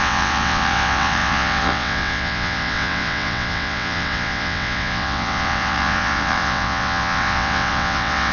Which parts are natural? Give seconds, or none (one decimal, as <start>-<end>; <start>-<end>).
none